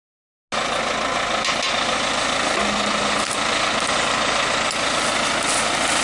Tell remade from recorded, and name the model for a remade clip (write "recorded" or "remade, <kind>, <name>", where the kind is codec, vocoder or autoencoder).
recorded